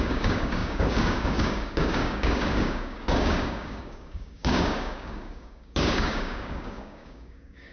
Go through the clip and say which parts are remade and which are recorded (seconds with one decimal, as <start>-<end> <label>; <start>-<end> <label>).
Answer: 0.0-7.7 remade